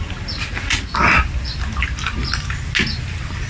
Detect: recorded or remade recorded